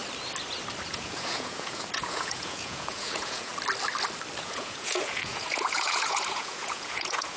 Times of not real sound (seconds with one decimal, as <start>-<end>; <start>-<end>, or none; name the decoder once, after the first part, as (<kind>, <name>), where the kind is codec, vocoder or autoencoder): 0.9-3.5 (vocoder, Vocos); 4.4-7.4